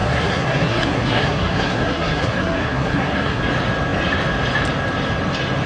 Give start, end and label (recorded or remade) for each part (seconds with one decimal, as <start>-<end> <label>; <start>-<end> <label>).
0.0-3.4 remade; 3.4-5.7 recorded